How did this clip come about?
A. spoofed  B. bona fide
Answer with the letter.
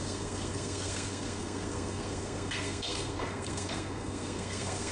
A